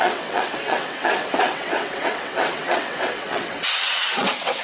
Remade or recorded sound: remade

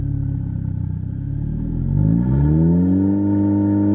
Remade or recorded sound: recorded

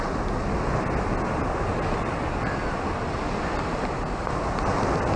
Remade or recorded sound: recorded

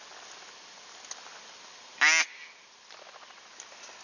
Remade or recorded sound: recorded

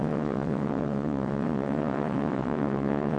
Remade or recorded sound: remade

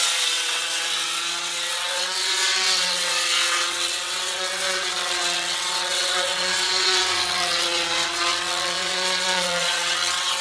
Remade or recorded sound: remade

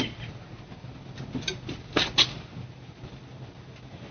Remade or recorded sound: recorded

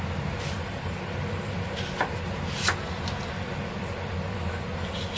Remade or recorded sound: recorded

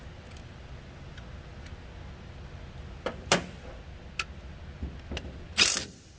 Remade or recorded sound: recorded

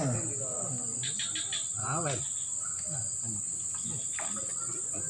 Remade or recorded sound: recorded